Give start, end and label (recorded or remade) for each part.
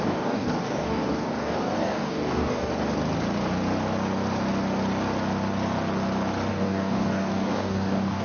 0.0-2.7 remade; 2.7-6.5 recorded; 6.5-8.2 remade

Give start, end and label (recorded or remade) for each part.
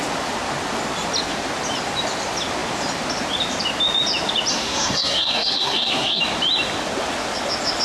0.0-4.5 recorded; 4.5-6.2 remade; 6.2-7.8 recorded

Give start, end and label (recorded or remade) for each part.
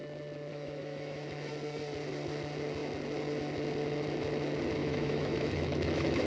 0.0-0.5 recorded; 0.5-1.5 remade; 1.5-4.8 recorded; 4.8-6.3 remade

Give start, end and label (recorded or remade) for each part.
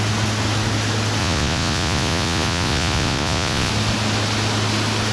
0.0-1.2 recorded; 1.2-3.7 remade; 3.7-5.1 recorded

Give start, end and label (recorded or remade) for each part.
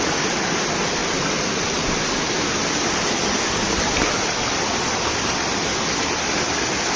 0.0-7.0 recorded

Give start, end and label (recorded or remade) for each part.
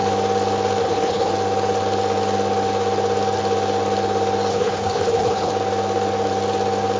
0.0-0.8 recorded; 0.8-1.3 remade; 1.3-4.5 recorded; 4.5-5.5 remade; 5.5-7.0 recorded